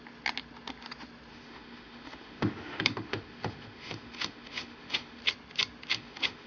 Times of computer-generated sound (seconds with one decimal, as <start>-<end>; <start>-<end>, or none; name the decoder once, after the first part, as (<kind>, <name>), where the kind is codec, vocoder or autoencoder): 1.3-5.2 (autoencoder, DAC-VAE); 5.9-6.5